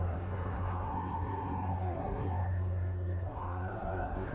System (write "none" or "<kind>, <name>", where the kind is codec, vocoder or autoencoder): codec, SNAC